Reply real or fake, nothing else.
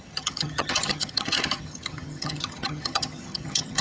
fake